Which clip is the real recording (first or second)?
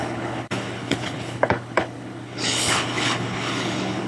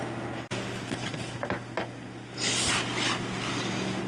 second